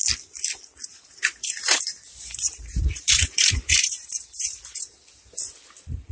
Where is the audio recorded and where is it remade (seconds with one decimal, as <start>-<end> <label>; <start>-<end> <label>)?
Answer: 0.0-0.9 recorded; 0.9-4.6 remade; 4.6-6.1 recorded

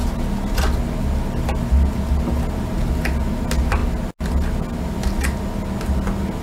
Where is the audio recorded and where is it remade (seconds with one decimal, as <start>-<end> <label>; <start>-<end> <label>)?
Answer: 0.0-6.4 recorded